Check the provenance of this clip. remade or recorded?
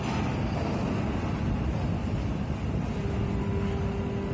recorded